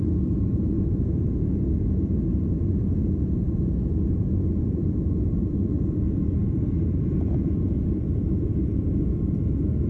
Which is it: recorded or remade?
remade